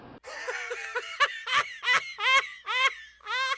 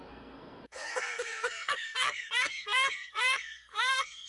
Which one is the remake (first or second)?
second